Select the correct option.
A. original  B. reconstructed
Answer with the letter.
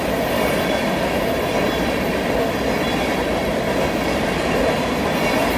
A